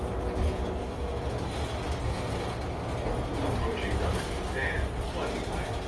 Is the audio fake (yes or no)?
no